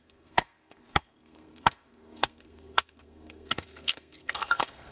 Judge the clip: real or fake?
fake